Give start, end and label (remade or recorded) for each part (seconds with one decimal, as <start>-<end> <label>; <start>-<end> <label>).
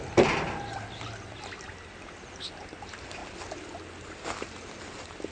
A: 0.0-5.3 recorded